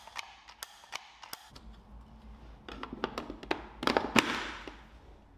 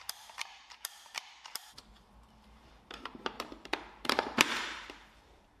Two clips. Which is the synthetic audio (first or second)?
second